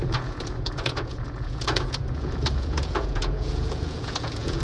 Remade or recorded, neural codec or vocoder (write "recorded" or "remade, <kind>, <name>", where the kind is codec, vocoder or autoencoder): remade, vocoder, Vocos